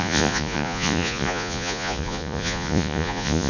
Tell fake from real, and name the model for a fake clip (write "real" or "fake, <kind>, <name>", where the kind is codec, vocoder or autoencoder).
fake, vocoder, Vocos